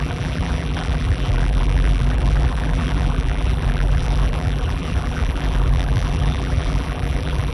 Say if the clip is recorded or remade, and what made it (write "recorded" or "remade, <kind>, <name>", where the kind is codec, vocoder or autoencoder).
remade, vocoder, BigVGAN v2